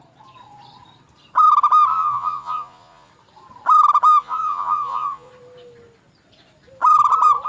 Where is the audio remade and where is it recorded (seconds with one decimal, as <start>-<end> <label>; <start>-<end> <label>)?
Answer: 0.0-1.9 recorded; 1.9-3.1 remade; 3.1-4.2 recorded; 4.2-5.3 remade; 5.3-7.5 recorded